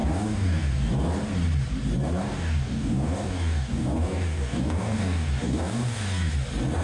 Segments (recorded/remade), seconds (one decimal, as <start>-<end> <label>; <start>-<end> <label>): 0.0-0.9 remade; 0.9-2.2 recorded; 2.2-6.3 remade; 6.3-6.8 recorded